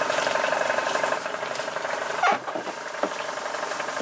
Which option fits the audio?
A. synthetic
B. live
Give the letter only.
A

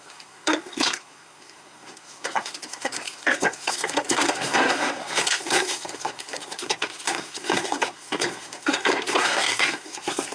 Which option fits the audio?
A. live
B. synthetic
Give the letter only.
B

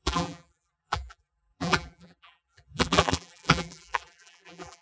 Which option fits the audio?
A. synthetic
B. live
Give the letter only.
A